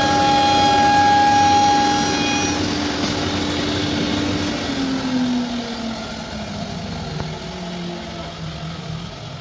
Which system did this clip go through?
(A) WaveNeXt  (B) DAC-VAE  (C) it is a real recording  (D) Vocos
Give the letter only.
C